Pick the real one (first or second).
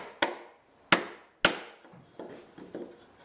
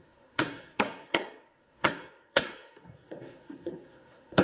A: first